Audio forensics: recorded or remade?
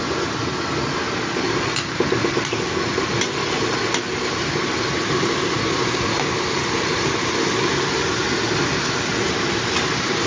recorded